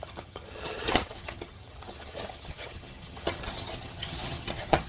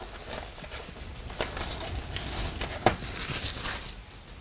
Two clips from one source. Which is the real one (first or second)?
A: second